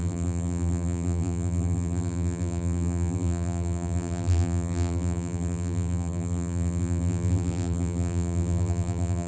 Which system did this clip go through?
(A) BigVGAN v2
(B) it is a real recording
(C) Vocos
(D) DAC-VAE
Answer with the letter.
A